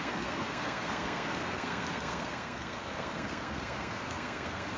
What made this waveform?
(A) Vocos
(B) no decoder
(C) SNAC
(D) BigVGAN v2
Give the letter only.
C